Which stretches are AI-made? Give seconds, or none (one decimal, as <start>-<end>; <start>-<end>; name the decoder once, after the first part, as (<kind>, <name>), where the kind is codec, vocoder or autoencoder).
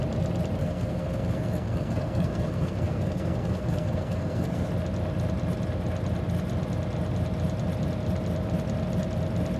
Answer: 0.6-4.7 (codec, SNAC)